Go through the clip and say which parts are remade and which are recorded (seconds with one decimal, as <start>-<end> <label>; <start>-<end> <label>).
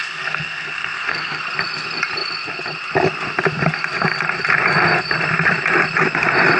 0.0-1.4 remade; 1.4-6.6 recorded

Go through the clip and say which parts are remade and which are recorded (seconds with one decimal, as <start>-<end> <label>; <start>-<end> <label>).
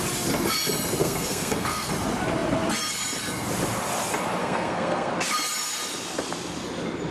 0.0-1.0 recorded; 1.0-1.9 remade; 1.9-4.4 recorded; 4.4-5.1 remade; 5.1-7.1 recorded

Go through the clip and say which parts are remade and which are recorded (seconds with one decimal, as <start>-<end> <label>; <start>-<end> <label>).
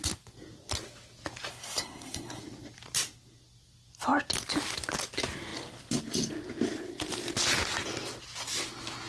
0.0-1.5 recorded; 1.5-2.4 remade; 2.4-9.1 recorded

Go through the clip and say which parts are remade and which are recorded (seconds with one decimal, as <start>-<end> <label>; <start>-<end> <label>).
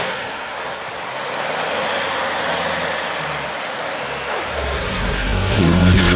0.0-0.8 remade; 0.8-4.5 recorded; 4.5-6.2 remade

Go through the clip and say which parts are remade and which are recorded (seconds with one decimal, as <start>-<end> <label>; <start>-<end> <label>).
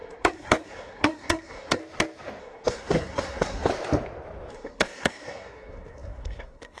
0.0-1.8 remade; 1.8-2.4 recorded; 2.4-3.7 remade; 3.7-4.5 recorded; 4.5-6.8 remade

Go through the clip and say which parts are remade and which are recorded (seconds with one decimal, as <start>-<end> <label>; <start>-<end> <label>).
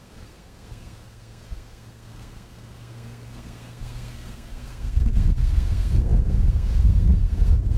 0.0-7.8 remade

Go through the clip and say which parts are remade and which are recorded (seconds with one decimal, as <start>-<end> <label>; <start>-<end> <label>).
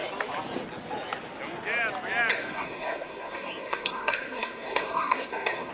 0.0-2.3 recorded; 2.3-5.7 remade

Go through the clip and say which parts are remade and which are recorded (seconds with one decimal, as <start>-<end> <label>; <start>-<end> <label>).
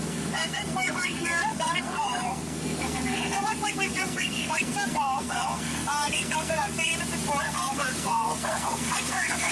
0.0-6.9 remade; 6.9-7.4 recorded; 7.4-9.5 remade